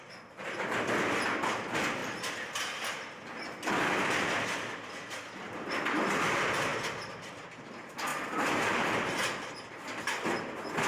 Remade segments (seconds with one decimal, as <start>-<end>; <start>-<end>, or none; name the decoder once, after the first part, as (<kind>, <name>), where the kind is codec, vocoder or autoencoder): none